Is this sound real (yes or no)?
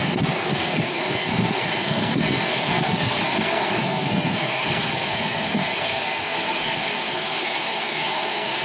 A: no